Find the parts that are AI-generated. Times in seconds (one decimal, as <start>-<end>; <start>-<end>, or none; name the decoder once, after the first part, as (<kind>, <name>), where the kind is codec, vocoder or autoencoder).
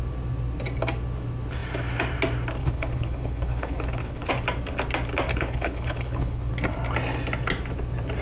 2.6-4.3 (codec, HILCodec); 5.3-6.5